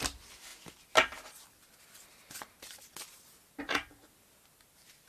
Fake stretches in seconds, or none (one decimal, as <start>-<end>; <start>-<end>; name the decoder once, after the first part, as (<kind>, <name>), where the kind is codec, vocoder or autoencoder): none